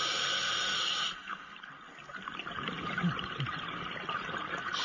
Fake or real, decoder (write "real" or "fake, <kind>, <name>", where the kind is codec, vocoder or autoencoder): real